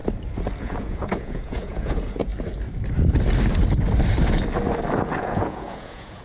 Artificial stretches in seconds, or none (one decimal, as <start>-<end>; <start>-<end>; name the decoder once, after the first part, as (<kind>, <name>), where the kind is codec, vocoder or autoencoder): 0.6-2.3 (vocoder, Vocos); 5.2-6.2